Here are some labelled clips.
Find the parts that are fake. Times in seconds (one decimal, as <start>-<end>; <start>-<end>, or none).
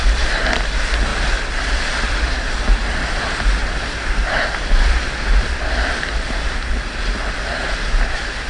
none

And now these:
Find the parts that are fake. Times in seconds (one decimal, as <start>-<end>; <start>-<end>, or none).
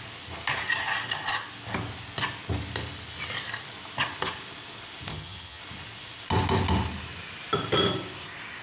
5.1-5.6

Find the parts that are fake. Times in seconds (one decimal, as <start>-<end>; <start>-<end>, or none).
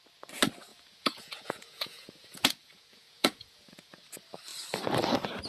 0.7-4.0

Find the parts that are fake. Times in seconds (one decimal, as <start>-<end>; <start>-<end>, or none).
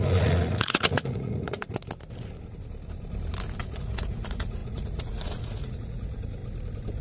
0.0-1.8; 3.6-6.4